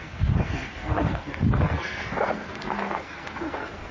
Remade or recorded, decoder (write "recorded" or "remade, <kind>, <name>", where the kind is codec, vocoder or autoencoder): remade, codec, SNAC